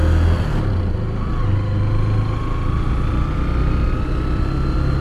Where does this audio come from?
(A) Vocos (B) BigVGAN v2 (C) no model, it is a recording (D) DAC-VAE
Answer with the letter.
C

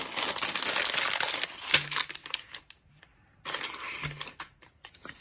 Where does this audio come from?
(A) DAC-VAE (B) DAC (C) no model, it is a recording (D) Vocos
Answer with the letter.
C